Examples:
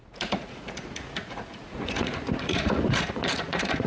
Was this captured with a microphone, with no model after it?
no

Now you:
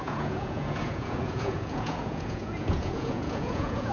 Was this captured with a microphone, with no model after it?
no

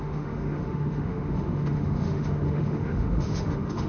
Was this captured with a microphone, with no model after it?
no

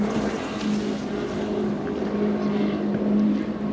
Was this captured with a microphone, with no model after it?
yes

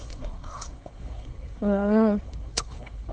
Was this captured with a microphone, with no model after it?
no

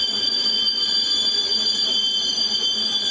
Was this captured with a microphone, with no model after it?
yes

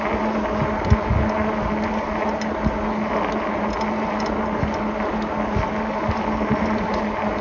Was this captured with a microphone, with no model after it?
yes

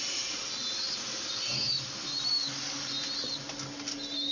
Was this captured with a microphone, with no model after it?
yes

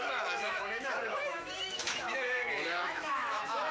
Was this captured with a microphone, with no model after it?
no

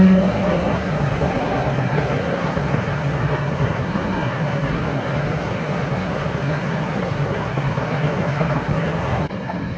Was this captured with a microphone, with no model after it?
no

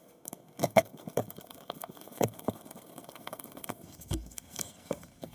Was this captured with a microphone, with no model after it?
no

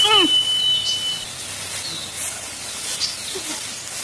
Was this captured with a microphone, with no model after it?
yes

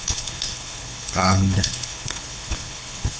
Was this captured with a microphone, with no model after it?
no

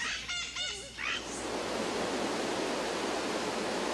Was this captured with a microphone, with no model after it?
yes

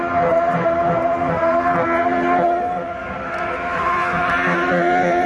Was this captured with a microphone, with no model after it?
yes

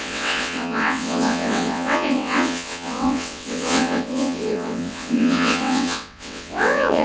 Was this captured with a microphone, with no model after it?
no